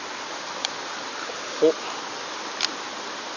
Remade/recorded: recorded